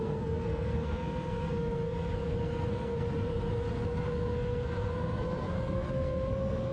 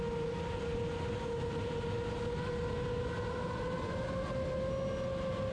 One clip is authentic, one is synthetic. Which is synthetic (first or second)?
first